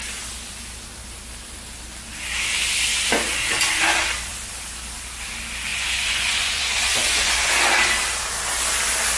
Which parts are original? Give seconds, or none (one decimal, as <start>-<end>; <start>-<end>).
0.0-5.7; 7.5-9.2

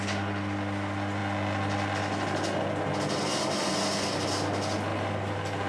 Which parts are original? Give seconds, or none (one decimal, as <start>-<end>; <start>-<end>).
0.0-5.7

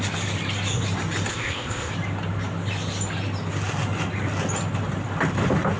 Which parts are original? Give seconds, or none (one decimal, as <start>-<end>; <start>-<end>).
0.0-1.3; 1.9-5.8

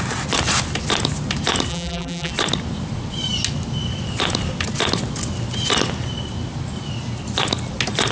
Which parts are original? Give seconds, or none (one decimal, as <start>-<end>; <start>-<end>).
0.0-1.7; 2.3-8.1

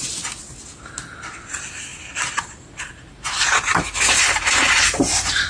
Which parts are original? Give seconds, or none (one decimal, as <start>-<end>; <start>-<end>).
0.0-1.9